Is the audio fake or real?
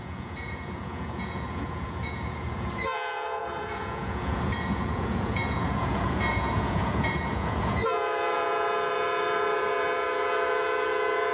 fake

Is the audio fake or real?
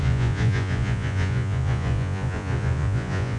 fake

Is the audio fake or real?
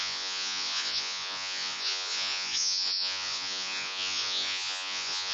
fake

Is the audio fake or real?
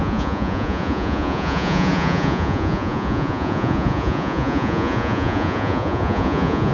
fake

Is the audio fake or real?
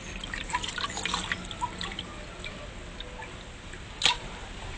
real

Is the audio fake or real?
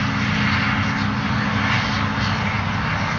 real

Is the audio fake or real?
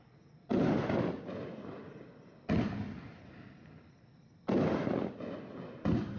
real